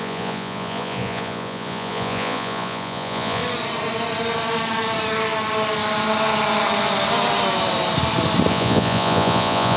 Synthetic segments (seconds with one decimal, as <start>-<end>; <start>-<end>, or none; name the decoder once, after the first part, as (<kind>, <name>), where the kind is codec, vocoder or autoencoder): 0.0-3.4 (vocoder, Vocos); 8.5-9.8